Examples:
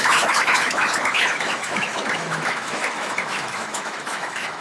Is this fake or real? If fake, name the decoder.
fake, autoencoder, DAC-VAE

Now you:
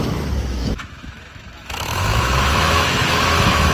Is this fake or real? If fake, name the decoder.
fake, autoencoder, DAC-VAE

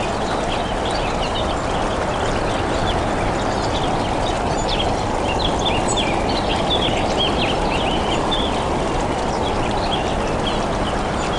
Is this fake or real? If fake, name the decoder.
real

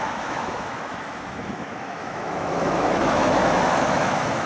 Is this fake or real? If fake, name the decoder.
fake, autoencoder, DAC-VAE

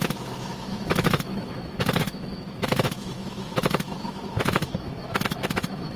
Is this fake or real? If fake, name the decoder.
fake, autoencoder, DAC-VAE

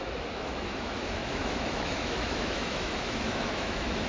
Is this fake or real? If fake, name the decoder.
fake, autoencoder, DAC-VAE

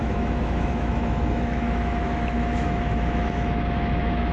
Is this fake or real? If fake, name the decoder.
fake, autoencoder, DAC-VAE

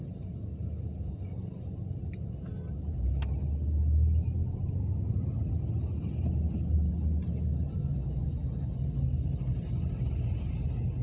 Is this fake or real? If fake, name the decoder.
real